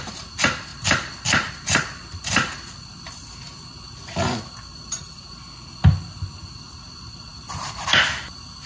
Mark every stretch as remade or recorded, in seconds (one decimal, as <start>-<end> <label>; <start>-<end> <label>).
0.0-0.7 recorded; 0.7-1.5 remade; 1.5-4.7 recorded; 4.7-5.3 remade; 5.3-7.3 recorded; 7.3-8.0 remade; 8.0-8.7 recorded